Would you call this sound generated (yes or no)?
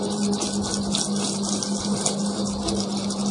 no